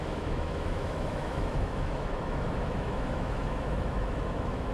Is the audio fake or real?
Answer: fake